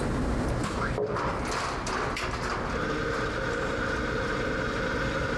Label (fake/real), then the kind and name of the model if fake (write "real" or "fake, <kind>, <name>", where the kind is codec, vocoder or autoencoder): real